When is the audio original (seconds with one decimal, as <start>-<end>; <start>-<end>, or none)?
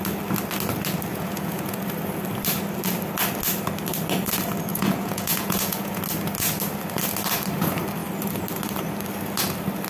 0.0-1.1; 1.8-4.7; 6.0-9.9